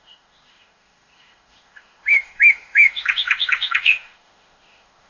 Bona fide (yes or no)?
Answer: no